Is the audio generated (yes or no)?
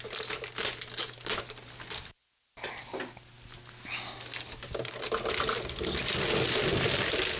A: no